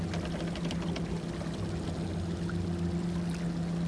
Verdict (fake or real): real